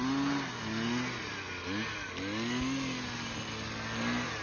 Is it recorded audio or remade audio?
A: recorded